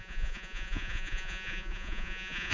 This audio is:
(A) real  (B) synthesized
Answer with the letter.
B